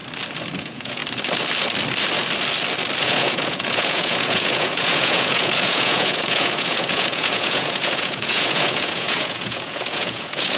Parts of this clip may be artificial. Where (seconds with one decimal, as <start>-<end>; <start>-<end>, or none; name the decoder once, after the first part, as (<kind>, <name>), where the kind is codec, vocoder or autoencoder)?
0.6-1.0 (vocoder, Vocos); 3.0-10.6